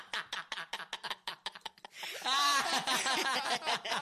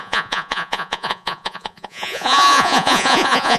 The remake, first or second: second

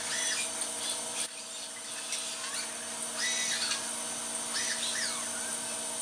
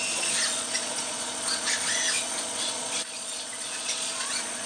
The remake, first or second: second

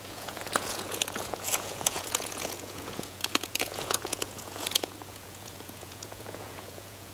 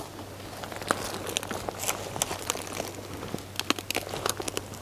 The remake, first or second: first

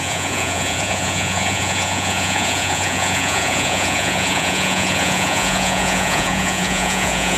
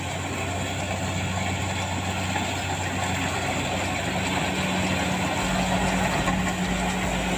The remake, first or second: first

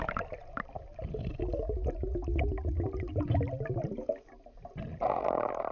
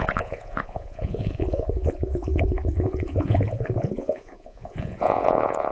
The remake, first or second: second